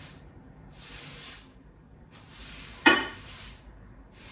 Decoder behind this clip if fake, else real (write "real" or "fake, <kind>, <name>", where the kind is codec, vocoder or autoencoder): fake, vocoder, BigVGAN v2